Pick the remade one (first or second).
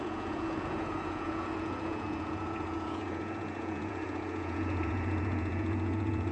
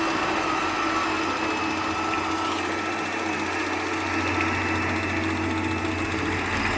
first